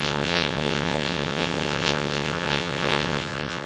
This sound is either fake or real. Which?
fake